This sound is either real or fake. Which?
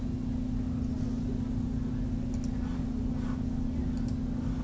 real